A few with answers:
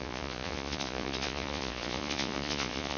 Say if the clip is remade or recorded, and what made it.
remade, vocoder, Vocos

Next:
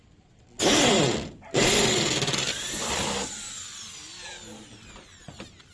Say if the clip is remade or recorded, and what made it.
recorded